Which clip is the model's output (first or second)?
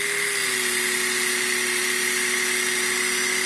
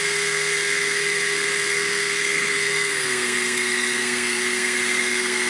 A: second